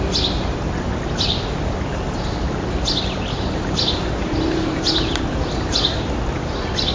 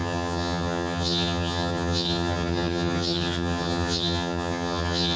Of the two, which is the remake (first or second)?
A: second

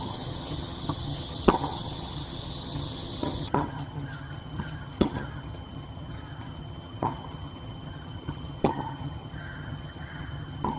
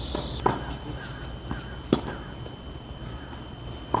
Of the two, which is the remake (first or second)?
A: first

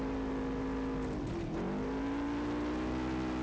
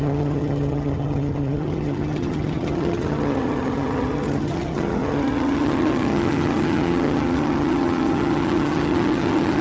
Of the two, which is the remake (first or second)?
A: second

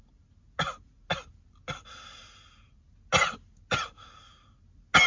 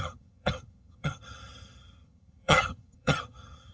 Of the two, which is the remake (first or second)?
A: second